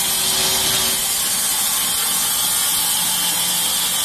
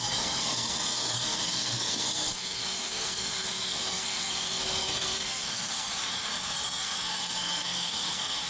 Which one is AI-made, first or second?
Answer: second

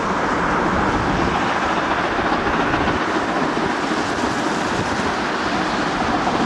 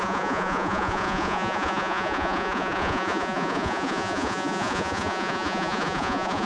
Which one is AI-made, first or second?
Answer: second